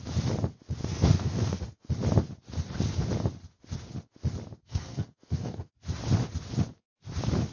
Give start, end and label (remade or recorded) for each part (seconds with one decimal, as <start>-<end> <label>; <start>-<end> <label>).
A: 0.0-0.8 recorded; 0.8-1.9 remade; 1.9-4.6 recorded; 4.6-5.7 remade; 5.7-7.5 recorded